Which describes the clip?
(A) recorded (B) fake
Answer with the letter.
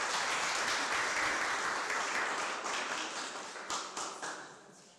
A